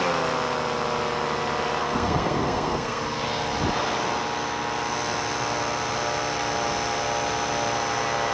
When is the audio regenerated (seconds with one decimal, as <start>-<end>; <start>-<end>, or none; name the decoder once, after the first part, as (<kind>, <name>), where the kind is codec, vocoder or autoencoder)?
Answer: 1.8-3.0 (codec, SNAC)